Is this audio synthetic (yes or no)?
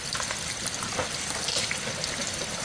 no